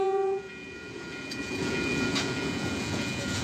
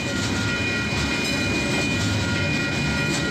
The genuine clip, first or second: second